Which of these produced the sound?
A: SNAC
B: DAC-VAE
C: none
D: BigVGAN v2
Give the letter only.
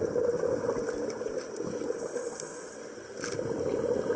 C